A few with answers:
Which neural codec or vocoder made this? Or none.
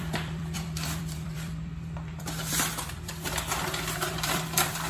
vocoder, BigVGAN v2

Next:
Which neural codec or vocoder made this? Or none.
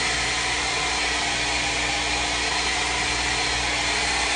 none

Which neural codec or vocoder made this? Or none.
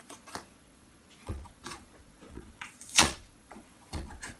vocoder, Vocos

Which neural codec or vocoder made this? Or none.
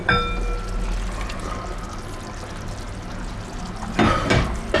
none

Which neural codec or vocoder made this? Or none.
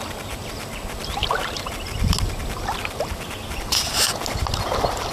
none